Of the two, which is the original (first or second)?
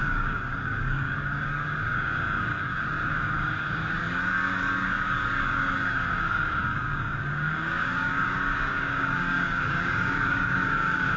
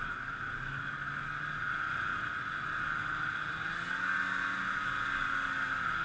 second